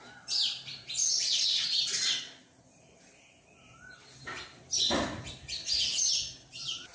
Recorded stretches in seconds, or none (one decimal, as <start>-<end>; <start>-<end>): 0.0-6.9